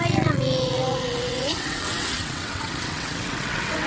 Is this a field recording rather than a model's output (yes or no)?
no